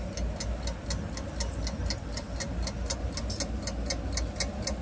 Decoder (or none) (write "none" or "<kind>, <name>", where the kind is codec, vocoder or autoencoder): none